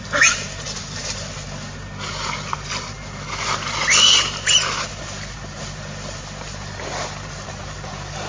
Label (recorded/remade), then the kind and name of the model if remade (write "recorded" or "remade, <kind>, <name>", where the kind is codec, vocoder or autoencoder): recorded